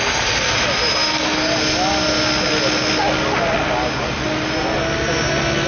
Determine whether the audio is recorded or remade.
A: recorded